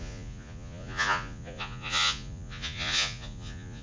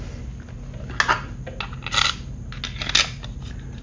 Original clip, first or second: second